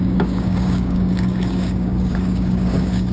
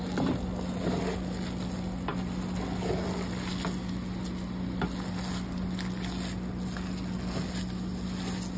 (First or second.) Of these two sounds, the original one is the second